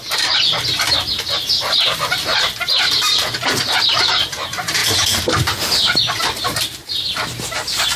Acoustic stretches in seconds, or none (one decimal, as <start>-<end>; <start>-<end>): 0.0-8.0